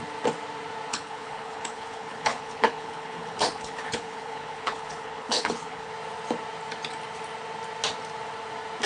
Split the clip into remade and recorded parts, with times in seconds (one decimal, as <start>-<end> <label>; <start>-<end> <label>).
0.0-0.9 recorded; 0.9-5.9 remade; 5.9-8.9 recorded